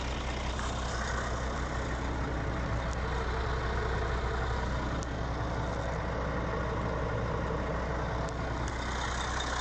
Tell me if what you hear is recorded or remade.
recorded